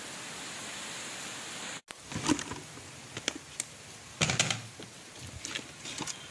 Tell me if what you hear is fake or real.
real